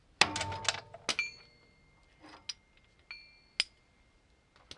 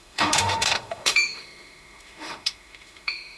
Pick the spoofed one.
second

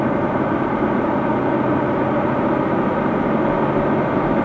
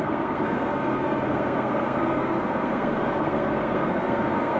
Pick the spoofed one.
second